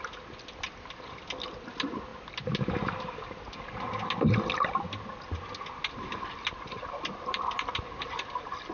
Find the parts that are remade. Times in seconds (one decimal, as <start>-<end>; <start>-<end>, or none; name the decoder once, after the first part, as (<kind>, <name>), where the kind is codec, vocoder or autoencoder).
none